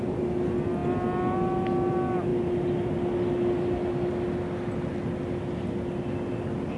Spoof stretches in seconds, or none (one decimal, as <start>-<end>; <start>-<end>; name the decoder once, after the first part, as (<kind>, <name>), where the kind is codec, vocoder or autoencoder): none